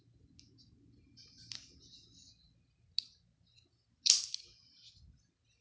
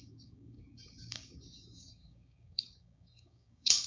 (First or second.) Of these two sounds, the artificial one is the second